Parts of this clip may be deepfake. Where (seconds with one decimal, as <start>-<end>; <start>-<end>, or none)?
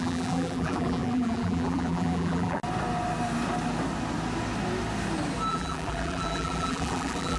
0.0-2.6; 5.5-7.4